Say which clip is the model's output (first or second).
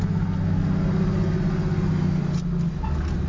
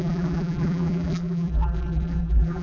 second